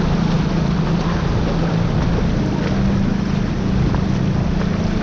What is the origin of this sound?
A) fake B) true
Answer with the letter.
B